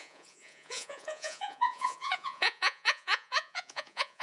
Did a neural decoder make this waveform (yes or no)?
yes